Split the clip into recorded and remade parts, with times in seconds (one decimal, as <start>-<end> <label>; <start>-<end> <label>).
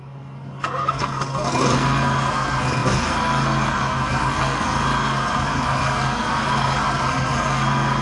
0.0-8.0 remade